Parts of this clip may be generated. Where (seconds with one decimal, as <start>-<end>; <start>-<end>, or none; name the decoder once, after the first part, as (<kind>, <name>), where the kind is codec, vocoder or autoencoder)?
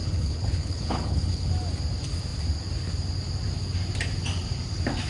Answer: 0.0-1.5 (codec, HILCodec)